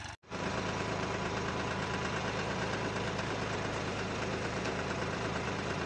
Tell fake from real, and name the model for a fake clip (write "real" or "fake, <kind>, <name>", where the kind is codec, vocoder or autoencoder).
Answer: fake, vocoder, BigVGAN v2